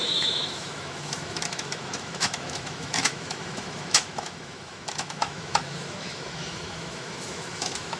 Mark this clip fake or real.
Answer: fake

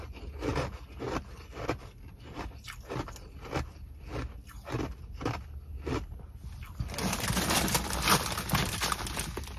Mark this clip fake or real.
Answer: real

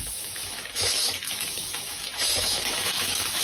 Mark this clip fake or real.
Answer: fake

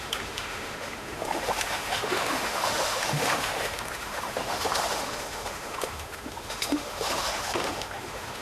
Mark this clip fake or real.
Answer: fake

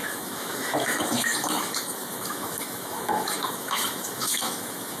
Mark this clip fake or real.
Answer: fake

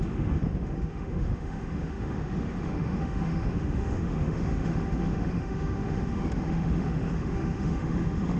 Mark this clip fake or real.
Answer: fake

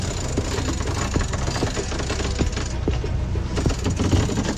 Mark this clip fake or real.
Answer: real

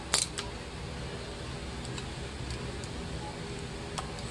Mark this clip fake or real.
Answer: real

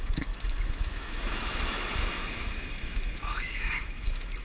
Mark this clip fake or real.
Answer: fake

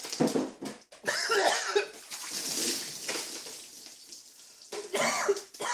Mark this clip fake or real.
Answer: real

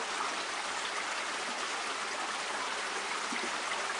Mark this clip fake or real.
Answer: real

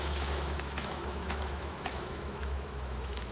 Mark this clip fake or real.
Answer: fake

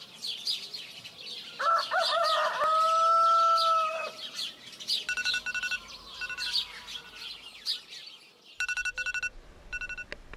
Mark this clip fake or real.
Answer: real